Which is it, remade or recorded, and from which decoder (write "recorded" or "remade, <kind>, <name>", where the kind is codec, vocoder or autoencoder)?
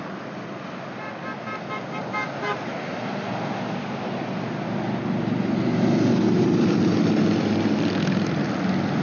recorded